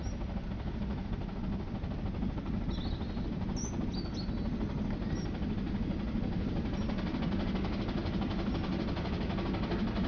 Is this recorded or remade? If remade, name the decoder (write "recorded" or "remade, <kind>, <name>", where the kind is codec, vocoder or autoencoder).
recorded